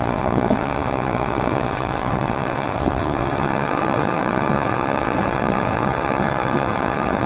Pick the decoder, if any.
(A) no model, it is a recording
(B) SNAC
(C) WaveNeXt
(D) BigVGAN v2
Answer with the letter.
C